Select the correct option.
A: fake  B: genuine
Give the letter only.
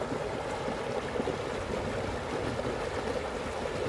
B